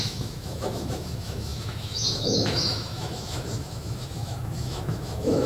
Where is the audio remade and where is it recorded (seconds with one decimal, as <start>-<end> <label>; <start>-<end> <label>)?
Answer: 0.0-5.5 remade